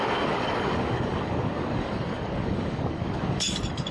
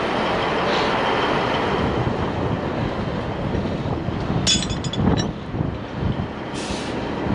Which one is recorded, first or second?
second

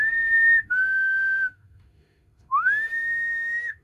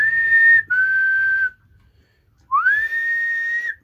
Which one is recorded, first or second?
second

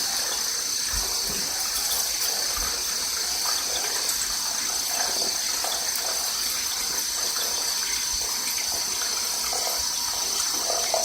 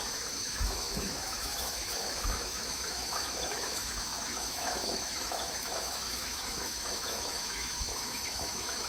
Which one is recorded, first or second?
first